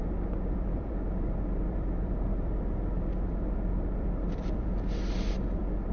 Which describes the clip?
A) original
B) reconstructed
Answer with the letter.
B